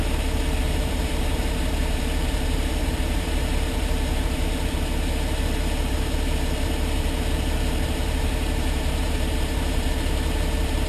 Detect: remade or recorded remade